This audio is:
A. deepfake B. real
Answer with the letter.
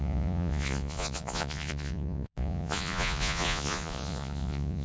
A